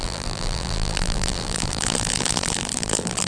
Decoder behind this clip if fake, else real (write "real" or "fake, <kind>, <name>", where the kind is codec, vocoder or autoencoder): fake, vocoder, BigVGAN v2